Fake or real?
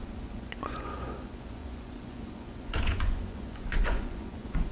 fake